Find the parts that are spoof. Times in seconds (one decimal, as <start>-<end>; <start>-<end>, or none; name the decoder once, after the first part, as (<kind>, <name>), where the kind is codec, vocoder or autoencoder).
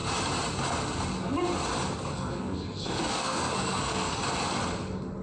2.1-4.1 (codec, SNAC)